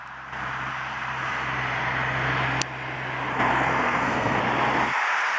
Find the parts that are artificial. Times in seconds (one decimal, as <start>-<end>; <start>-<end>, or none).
3.5-4.4